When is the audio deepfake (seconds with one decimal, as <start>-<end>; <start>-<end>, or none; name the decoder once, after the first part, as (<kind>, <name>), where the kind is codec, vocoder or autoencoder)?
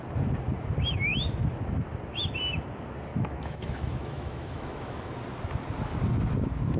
3.1-5.1 (autoencoder, DAC-VAE)